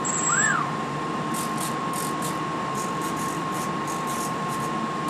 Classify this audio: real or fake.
fake